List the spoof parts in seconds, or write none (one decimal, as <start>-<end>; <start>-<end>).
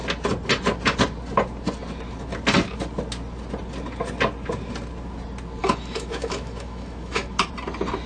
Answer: 5.6-7.5